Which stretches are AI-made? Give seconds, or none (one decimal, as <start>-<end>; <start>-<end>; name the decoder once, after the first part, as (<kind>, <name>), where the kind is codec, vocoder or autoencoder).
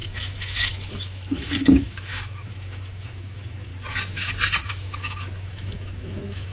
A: 0.0-3.7 (autoencoder, DAC-VAE); 4.7-6.5